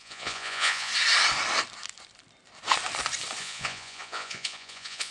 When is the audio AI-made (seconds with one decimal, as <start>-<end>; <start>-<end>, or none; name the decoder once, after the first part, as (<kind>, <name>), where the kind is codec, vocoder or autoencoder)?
0.0-0.9 (vocoder, Vocos); 3.4-5.1